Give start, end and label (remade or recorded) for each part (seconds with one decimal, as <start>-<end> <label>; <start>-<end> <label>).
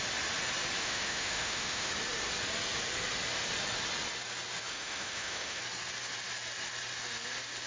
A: 0.0-0.8 recorded; 0.8-1.9 remade; 1.9-4.7 recorded; 4.7-5.6 remade; 5.6-7.7 recorded